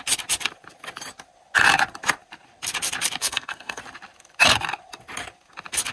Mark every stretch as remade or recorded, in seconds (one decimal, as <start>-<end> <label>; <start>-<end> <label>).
0.0-3.2 recorded; 3.2-3.8 remade; 3.8-5.9 recorded

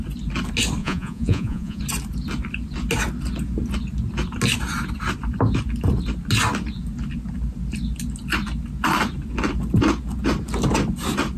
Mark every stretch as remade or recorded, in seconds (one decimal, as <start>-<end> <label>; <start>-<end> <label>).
0.0-0.8 recorded; 0.8-1.8 remade; 1.8-11.4 recorded